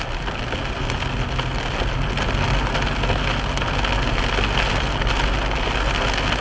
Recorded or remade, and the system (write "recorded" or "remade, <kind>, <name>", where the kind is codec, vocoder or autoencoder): recorded